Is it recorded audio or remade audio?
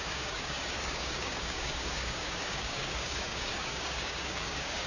remade